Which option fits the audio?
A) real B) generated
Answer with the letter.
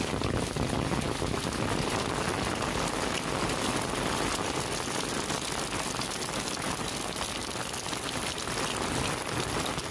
A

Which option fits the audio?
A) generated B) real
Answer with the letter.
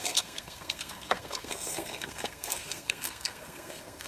A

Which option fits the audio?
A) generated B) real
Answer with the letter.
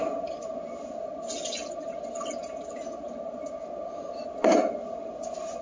B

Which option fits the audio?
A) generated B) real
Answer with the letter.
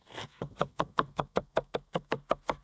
A